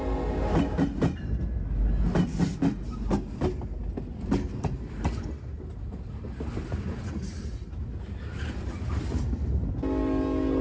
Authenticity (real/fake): real